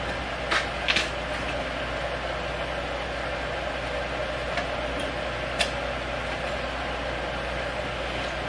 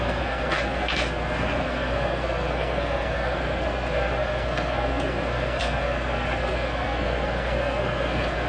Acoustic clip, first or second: first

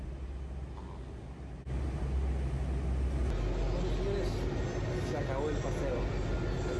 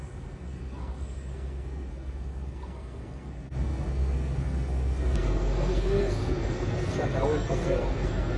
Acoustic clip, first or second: first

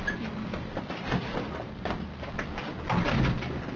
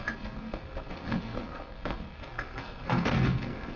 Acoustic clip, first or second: first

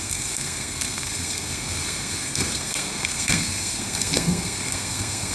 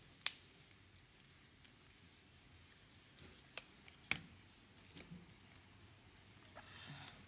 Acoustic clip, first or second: second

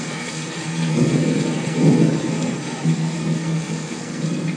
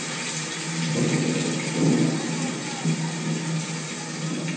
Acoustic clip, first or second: second